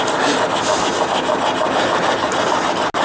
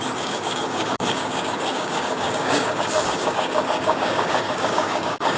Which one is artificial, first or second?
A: second